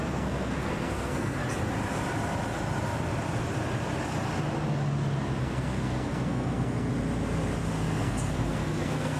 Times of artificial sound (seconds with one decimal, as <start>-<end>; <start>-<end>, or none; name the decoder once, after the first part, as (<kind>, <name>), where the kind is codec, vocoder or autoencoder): 0.0-1.4 (codec, SNAC); 5.4-6.9; 7.7-9.2

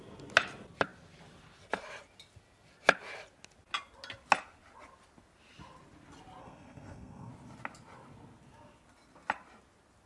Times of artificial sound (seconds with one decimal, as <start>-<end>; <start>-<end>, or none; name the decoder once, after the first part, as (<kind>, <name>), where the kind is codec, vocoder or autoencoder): 6.4-7.3 (codec, SNAC)

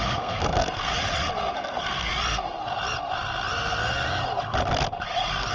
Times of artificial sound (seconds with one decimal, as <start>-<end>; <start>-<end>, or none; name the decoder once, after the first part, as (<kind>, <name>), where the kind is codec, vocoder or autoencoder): 0.0-0.9 (codec, SNAC); 1.5-2.1